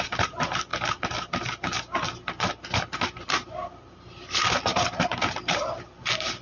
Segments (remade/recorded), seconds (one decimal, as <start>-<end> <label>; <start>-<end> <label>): 0.0-4.7 recorded; 4.7-6.0 remade; 6.0-6.4 recorded